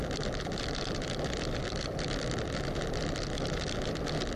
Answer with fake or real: real